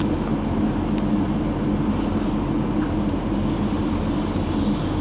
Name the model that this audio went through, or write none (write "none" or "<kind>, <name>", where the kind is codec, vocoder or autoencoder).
none